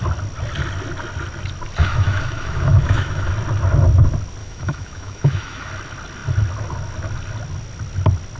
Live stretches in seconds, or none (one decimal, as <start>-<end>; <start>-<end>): 0.0-1.8; 3.3-4.4; 5.7-8.4